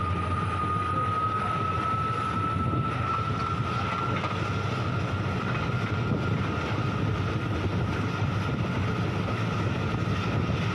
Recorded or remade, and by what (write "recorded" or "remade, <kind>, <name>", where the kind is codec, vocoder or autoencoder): recorded